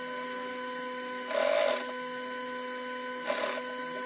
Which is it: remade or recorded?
recorded